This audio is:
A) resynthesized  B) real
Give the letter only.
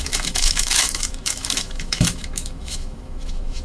A